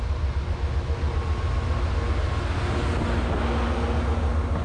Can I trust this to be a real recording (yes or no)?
yes